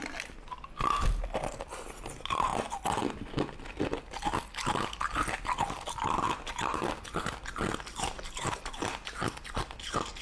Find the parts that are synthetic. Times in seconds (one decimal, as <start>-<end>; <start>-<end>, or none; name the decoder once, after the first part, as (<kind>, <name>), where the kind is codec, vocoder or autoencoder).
none

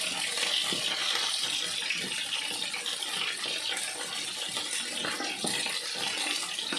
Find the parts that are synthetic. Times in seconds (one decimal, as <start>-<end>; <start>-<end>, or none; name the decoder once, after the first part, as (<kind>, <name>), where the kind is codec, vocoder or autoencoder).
none